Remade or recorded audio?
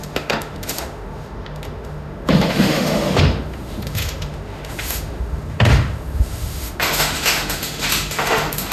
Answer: remade